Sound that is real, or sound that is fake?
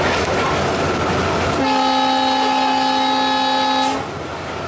real